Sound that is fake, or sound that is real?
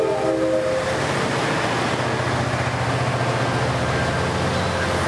real